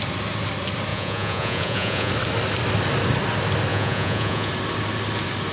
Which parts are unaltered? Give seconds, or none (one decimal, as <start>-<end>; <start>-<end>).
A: 0.0-0.9; 2.1-3.7; 4.5-5.5